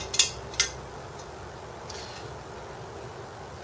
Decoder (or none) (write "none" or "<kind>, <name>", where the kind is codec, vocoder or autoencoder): none